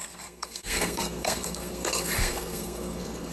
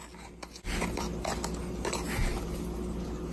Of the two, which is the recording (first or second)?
second